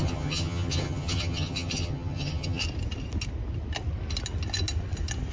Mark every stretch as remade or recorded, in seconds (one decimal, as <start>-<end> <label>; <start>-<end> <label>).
0.0-2.6 remade; 2.6-5.3 recorded